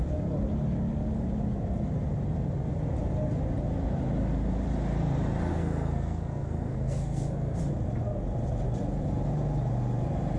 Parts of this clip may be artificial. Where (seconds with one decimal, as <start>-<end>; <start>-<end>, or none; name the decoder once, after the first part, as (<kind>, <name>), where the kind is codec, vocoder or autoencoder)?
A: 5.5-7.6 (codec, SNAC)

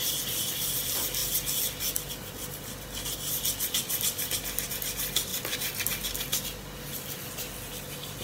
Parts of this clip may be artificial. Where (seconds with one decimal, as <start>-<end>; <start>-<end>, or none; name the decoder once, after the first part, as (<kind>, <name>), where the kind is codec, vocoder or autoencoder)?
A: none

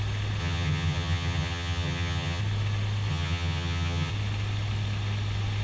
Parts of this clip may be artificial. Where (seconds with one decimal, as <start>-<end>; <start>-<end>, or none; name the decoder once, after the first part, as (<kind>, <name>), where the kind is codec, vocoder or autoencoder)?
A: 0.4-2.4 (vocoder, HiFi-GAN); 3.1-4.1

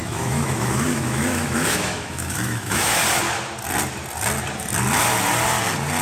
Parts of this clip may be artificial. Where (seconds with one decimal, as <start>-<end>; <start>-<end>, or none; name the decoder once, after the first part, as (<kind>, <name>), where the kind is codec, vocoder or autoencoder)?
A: 0.0-3.0 (autoencoder, DAC-VAE)

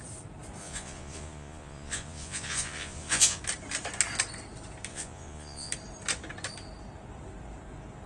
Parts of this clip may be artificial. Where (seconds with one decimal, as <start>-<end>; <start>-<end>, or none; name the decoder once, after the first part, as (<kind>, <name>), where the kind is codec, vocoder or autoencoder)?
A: 0.6-3.4 (vocoder, Vocos); 4.9-5.7